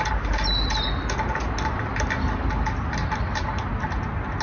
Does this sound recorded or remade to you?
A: recorded